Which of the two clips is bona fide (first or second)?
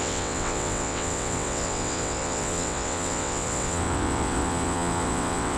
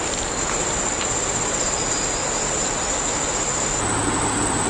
second